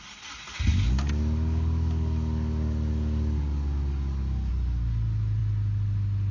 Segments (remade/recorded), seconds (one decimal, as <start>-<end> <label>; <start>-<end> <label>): 0.0-0.7 recorded; 0.7-4.5 remade; 4.5-6.3 recorded